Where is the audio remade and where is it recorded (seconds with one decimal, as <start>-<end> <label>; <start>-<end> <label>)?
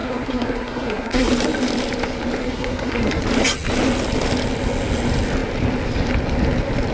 0.0-1.3 remade; 1.3-2.4 recorded; 2.4-3.2 remade; 3.2-6.9 recorded